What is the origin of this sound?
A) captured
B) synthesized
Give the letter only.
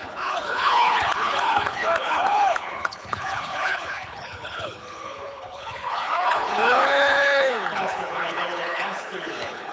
B